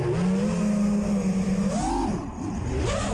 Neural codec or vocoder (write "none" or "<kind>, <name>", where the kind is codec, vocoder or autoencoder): none